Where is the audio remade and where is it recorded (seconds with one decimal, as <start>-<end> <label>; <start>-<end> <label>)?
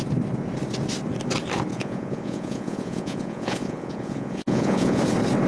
0.0-1.7 recorded; 1.7-5.0 remade; 5.0-5.5 recorded